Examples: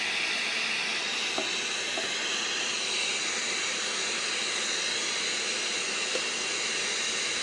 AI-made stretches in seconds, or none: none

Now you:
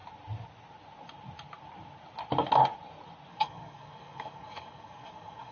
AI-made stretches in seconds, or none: 3.3-5.5 (codec, DAC)

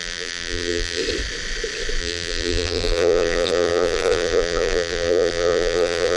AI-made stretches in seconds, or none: 0.0-1.0 (vocoder, BigVGAN v2); 2.0-6.2